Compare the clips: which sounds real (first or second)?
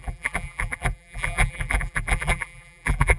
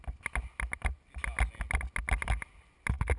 second